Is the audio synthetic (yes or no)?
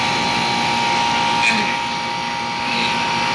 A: no